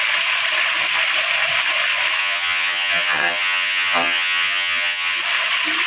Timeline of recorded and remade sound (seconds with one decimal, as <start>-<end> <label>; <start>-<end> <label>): 0.0-2.2 recorded; 2.2-5.2 remade; 5.2-5.9 recorded